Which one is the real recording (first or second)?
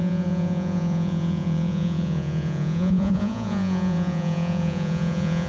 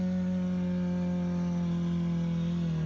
second